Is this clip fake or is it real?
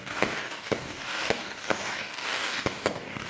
fake